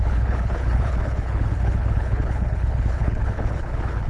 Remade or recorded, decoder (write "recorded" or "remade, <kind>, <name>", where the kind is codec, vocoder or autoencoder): remade, codec, HILCodec